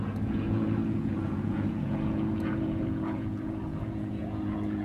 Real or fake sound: fake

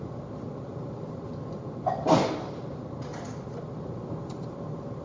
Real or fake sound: real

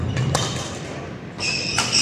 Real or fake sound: real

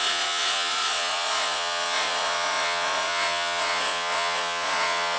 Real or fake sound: fake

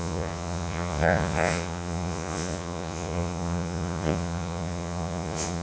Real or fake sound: fake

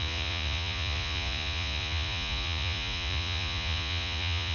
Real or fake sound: fake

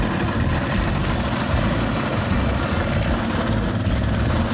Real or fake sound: real